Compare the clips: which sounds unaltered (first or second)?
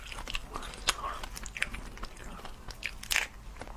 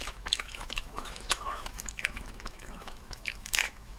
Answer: first